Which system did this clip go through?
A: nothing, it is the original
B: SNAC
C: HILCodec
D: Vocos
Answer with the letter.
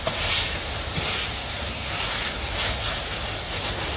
A